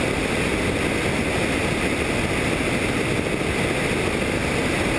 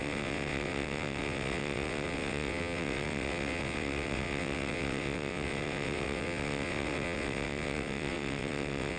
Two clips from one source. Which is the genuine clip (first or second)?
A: first